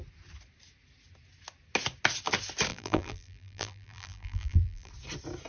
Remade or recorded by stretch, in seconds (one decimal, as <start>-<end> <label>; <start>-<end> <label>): 0.0-2.7 recorded; 2.7-4.9 remade; 4.9-5.5 recorded